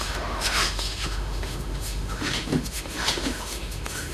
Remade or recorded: remade